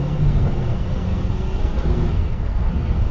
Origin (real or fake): fake